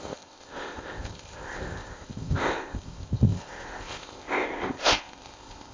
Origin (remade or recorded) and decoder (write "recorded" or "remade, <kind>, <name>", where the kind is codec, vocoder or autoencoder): remade, codec, ZipCodec